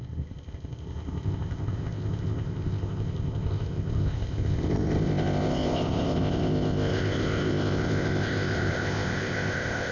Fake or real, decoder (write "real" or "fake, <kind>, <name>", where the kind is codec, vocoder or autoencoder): fake, codec, ZipCodec